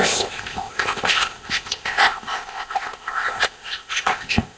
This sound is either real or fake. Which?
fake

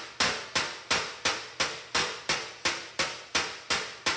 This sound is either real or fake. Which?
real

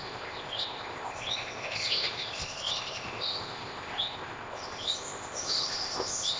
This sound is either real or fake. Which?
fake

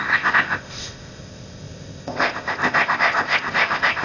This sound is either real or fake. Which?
fake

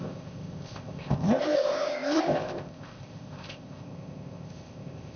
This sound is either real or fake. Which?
fake